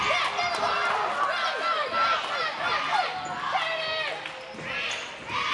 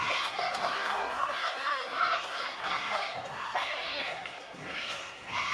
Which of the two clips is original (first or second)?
first